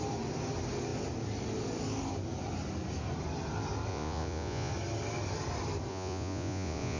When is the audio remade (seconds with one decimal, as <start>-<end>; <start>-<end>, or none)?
3.9-4.7; 5.9-7.0